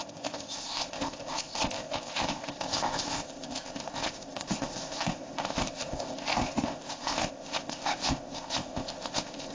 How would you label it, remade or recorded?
remade